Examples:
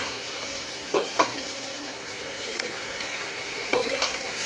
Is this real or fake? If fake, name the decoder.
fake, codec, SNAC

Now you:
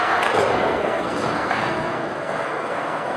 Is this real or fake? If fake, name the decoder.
fake, codec, SNAC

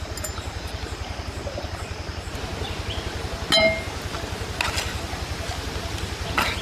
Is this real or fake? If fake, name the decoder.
real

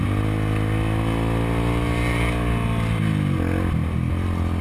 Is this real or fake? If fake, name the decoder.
real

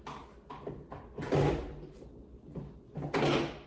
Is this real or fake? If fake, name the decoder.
real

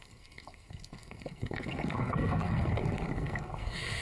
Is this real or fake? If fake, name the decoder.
fake, codec, SNAC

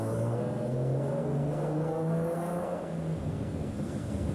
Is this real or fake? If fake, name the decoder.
fake, codec, SNAC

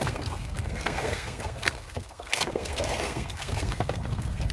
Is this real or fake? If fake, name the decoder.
fake, codec, SNAC